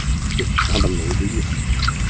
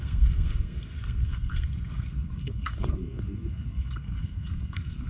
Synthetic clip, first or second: second